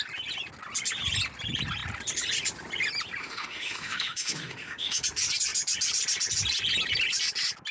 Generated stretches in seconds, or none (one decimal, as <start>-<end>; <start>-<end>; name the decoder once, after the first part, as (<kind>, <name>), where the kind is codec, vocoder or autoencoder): 3.2-5.0 (autoencoder, DAC-VAE)